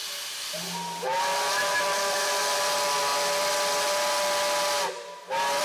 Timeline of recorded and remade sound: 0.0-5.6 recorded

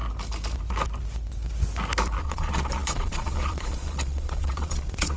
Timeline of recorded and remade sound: 0.0-2.2 recorded; 2.2-5.2 remade